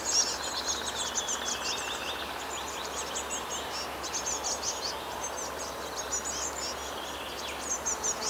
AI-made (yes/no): no